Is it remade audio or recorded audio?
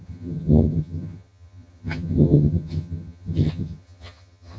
remade